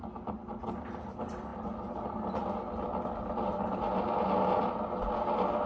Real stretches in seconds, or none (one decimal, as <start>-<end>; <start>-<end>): 0.0-5.7

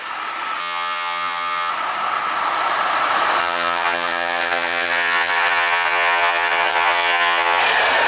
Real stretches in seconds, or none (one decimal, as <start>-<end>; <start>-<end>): 0.0-0.6; 1.7-3.4; 7.6-8.1